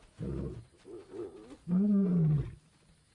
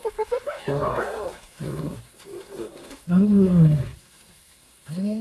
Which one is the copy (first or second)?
second